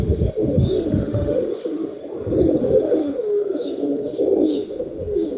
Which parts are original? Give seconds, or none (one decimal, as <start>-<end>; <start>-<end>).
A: 2.0-2.6